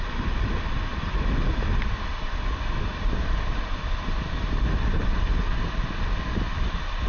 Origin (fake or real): real